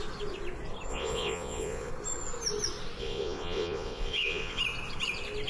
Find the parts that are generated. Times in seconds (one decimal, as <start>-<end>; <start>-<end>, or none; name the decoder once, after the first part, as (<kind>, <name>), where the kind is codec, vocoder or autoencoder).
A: 0.9-1.9 (vocoder, Vocos); 3.0-4.6